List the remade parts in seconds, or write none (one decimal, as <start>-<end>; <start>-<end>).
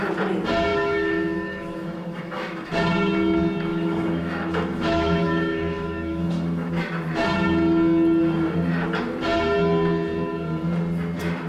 0.7-2.7; 3.7-6.7